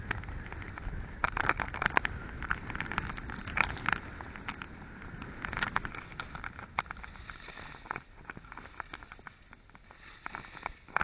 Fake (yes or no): no